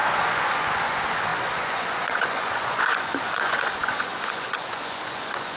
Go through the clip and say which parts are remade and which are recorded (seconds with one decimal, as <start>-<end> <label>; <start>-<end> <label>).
0.0-5.6 remade